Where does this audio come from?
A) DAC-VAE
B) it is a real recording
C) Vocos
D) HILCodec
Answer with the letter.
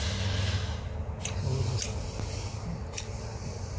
B